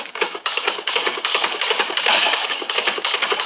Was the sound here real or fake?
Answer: fake